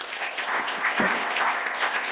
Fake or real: fake